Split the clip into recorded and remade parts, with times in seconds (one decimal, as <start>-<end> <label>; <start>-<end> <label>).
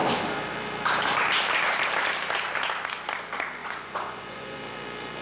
0.0-3.6 recorded; 3.6-4.6 remade; 4.6-5.2 recorded